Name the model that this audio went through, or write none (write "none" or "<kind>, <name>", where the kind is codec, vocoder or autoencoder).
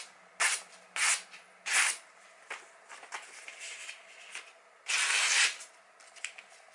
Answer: none